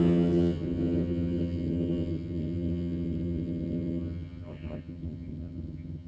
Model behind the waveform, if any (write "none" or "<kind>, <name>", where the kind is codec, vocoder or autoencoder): vocoder, HiFi-GAN